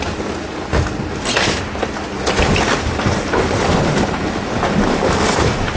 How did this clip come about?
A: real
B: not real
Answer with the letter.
A